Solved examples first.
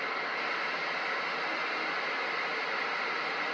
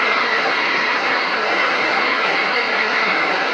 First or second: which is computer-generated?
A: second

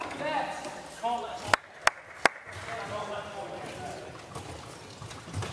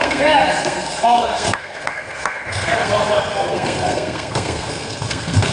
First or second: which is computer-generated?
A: second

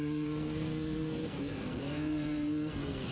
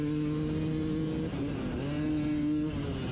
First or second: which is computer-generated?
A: first